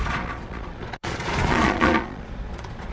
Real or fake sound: fake